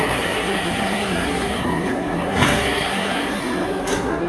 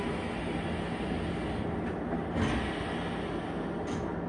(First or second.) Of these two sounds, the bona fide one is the second